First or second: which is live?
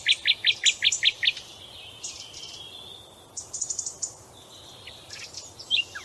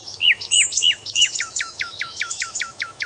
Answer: first